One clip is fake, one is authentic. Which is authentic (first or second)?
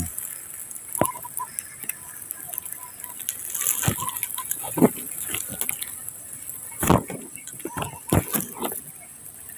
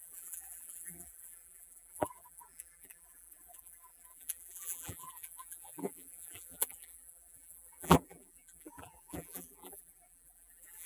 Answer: first